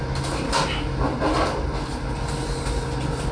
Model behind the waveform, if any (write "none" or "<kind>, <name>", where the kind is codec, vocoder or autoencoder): none